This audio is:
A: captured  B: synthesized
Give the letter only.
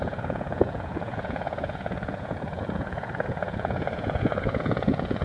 B